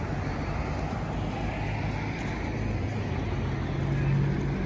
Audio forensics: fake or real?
real